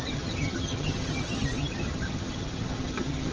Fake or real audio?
fake